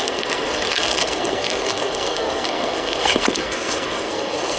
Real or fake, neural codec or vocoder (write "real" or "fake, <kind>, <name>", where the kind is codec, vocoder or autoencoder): fake, codec, SNAC